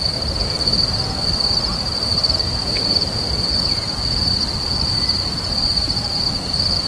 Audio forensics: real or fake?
real